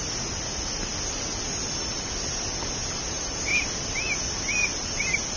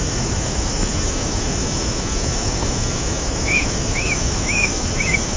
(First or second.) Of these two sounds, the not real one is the second